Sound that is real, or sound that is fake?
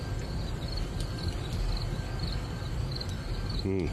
real